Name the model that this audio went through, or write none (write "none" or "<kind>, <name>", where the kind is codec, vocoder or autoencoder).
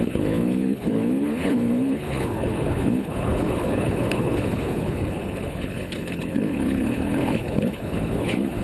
codec, HILCodec